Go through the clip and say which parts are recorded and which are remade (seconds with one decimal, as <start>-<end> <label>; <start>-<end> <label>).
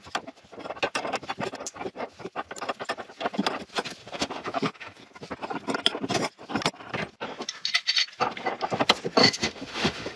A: 0.0-4.0 recorded; 4.0-5.0 remade; 5.0-9.2 recorded; 9.2-10.2 remade